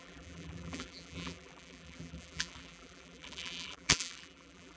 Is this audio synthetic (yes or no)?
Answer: yes